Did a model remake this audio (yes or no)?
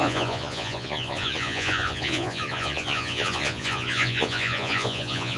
yes